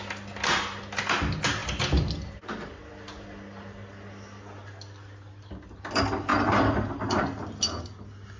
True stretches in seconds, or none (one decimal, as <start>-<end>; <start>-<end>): 0.0-8.4